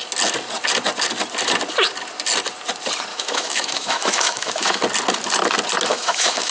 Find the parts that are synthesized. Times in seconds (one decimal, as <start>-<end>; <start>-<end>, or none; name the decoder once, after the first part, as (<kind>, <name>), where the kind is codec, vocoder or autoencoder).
3.1-4.8 (autoencoder, DAC-VAE); 5.9-6.5